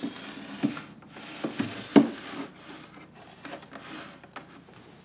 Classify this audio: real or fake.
real